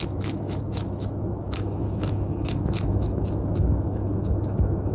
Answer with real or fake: fake